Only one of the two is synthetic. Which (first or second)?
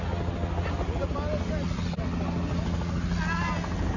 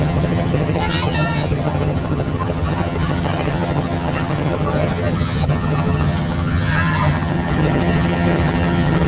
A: second